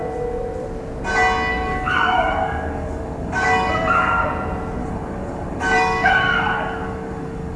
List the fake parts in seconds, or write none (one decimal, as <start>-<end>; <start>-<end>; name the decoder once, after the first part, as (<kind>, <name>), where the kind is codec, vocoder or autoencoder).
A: 1.5-4.2 (codec, DAC); 4.8-7.6